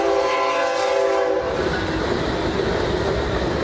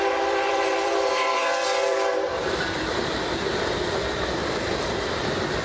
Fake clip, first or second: second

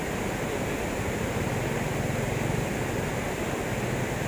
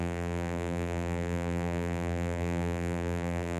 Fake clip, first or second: second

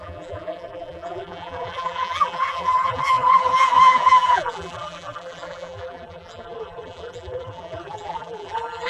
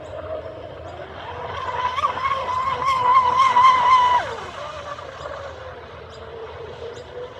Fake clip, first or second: first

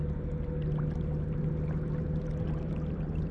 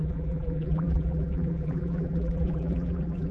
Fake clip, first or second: second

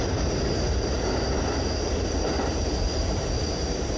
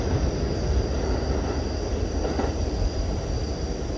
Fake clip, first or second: first